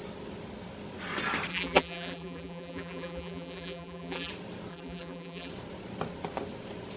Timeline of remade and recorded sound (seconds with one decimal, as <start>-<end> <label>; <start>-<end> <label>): 0.0-1.5 recorded; 1.5-4.3 remade; 4.3-4.7 recorded; 4.7-5.5 remade; 5.5-7.0 recorded